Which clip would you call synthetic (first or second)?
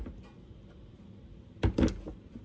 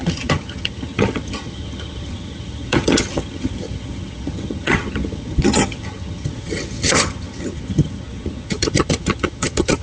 second